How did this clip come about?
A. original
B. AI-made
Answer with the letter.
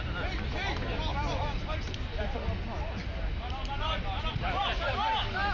A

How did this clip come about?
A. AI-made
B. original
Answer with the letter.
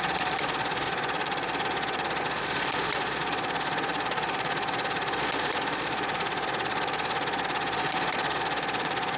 A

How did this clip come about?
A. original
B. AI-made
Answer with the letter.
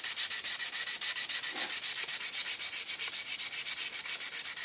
A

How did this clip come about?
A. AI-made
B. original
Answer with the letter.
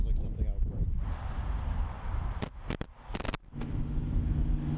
B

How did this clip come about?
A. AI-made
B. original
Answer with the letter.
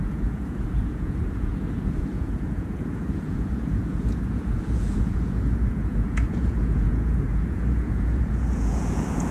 A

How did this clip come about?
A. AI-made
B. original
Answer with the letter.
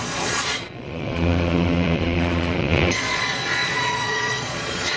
A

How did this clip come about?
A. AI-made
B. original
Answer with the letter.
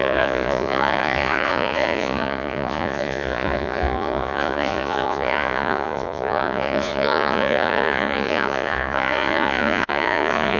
A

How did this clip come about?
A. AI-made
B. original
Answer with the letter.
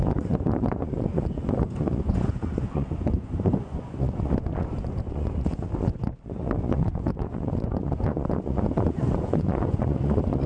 A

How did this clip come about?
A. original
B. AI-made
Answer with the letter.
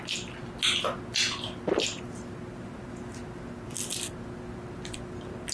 A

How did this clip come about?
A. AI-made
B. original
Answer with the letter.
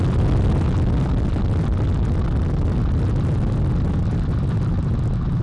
B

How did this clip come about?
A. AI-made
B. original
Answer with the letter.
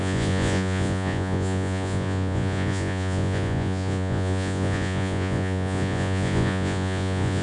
A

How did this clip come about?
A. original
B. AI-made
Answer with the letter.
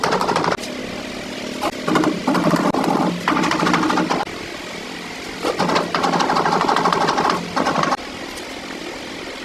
A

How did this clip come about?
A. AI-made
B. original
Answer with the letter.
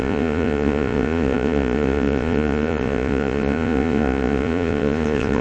A